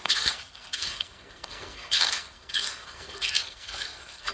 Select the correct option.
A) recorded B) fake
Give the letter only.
B